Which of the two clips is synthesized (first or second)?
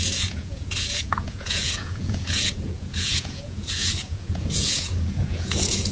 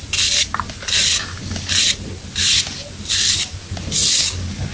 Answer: first